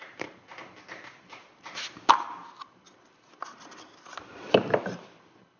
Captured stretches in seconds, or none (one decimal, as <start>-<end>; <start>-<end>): 0.0-5.6